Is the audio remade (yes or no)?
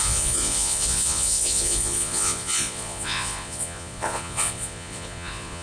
yes